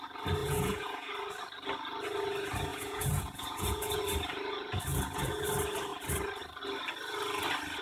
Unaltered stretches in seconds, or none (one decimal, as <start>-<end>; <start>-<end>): 0.0-0.4; 1.1-2.7; 4.0-4.9; 5.4-7.8